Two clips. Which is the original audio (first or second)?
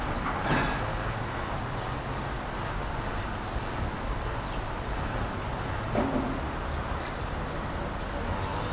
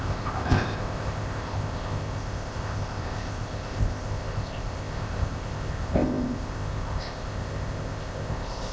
first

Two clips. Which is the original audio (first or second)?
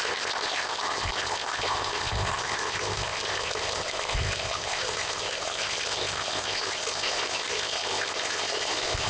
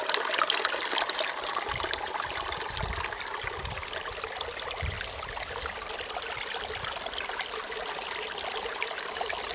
second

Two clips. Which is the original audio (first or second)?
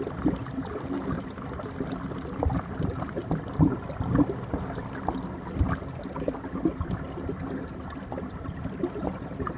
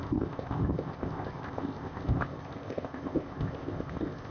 first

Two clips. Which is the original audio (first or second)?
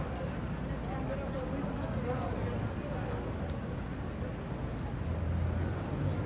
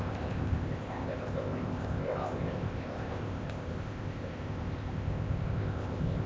first